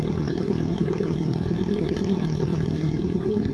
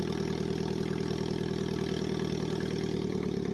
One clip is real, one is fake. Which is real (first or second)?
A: second